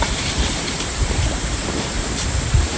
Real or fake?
fake